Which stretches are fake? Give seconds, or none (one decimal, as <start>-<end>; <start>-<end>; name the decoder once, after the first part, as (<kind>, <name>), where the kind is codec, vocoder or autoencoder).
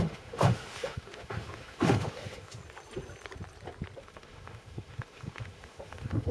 0.0-2.6 (autoencoder, DAC-VAE); 4.0-6.3